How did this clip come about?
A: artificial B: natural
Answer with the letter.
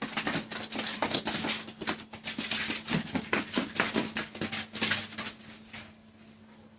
B